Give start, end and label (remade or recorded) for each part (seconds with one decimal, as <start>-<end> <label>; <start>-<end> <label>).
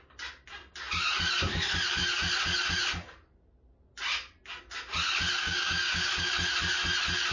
0.0-5.4 recorded; 5.4-6.3 remade; 6.3-7.3 recorded